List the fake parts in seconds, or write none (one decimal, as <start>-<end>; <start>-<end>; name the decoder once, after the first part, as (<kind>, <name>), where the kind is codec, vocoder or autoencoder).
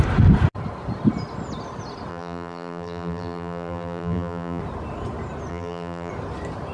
2.1-4.6 (vocoder, BigVGAN v2); 5.5-6.1